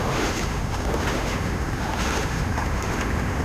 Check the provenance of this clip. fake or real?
fake